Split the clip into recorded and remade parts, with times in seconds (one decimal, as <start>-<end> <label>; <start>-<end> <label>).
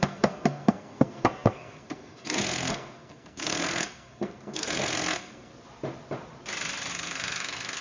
0.0-5.5 remade; 5.5-6.9 recorded; 6.9-7.8 remade